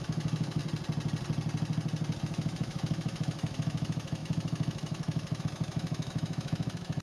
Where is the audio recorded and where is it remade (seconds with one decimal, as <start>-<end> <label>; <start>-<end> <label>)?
0.0-0.6 remade; 0.6-2.2 recorded; 2.2-7.0 remade

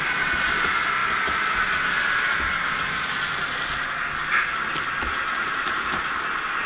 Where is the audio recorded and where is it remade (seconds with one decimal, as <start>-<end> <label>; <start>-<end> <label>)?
0.0-5.2 recorded; 5.2-6.0 remade; 6.0-6.7 recorded

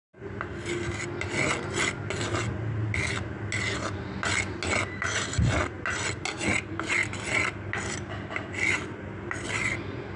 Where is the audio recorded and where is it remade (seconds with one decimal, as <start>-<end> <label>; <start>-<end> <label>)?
0.0-10.2 recorded